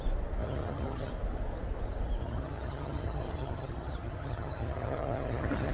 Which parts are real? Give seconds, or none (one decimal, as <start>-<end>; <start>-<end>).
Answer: 0.0-0.4; 1.1-2.2